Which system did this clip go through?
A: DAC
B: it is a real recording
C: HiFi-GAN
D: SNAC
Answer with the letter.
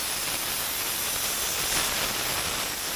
B